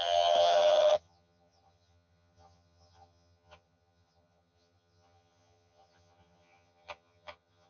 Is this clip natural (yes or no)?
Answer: no